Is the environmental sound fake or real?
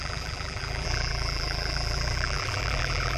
fake